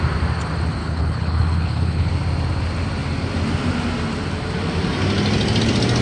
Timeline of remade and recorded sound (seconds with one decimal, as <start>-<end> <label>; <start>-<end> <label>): 0.0-0.8 recorded; 0.8-2.1 remade; 2.1-6.0 recorded